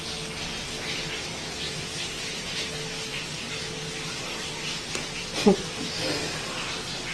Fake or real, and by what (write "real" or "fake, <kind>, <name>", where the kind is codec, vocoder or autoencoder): real